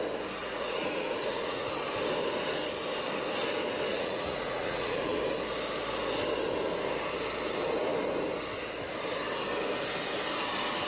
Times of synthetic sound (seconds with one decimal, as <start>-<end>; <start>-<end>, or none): 0.4-1.7; 3.9-5.2